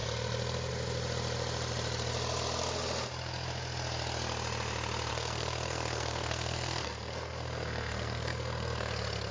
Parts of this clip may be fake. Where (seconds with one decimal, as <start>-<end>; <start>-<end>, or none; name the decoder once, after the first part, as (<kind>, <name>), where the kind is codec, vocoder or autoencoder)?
5.1-8.9 (codec, SNAC)